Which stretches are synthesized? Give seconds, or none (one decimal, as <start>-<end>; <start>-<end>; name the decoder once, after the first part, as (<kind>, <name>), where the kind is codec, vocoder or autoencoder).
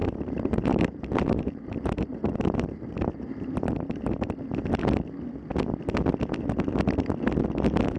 0.0-4.3 (vocoder, BigVGAN v2)